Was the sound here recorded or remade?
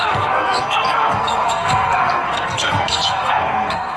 remade